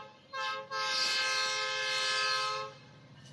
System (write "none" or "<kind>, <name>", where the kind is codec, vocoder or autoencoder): none